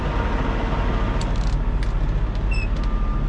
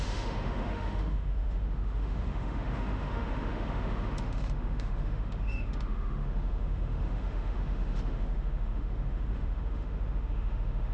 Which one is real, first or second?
first